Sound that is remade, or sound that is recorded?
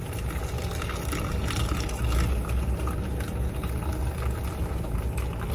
recorded